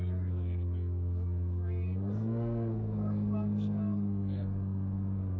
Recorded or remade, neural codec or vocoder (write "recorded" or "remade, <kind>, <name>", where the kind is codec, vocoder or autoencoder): remade, codec, SNAC